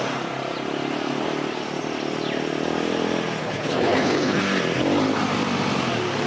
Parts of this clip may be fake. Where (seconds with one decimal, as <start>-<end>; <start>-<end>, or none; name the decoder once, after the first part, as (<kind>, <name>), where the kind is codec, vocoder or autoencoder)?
3.4-4.4 (codec, HILCodec)

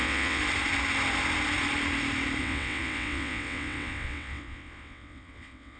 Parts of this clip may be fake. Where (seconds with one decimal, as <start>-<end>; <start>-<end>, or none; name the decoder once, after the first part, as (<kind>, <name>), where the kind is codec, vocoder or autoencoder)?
0.0-0.4 (vocoder, WaveNeXt); 2.4-5.8

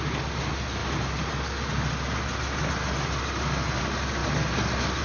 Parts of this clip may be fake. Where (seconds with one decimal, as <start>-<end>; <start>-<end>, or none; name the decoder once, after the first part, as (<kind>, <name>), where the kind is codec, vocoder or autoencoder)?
none

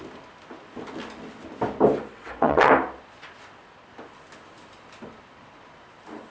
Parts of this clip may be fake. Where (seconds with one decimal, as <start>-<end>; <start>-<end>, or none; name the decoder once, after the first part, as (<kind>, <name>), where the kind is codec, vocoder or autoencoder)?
2.1-2.7 (vocoder, WaveNeXt)

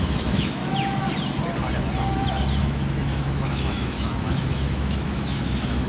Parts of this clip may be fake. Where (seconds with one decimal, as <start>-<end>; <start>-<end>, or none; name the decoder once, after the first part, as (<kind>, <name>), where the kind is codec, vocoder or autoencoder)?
0.0-0.6 (autoencoder, DAC-VAE); 2.6-5.9

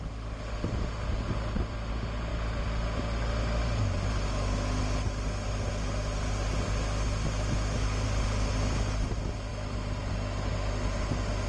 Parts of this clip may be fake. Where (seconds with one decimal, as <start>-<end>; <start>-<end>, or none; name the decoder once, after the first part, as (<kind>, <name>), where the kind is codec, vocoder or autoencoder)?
none